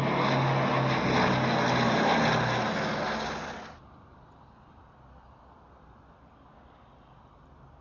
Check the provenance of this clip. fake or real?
real